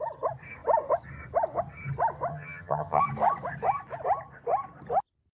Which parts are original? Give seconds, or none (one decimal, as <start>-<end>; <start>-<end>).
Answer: 0.0-2.3; 3.0-5.3